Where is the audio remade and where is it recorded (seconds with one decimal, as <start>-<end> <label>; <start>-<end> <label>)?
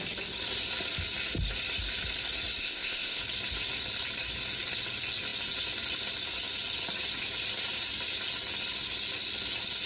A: 0.0-2.6 recorded; 2.6-3.2 remade; 3.2-9.9 recorded